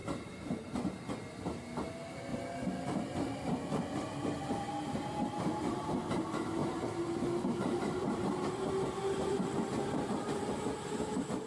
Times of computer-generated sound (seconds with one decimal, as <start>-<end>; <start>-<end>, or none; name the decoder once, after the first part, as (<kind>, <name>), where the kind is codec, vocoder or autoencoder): 0.0-0.5 (vocoder, BigVGAN v2); 6.6-8.7; 9.3-10.5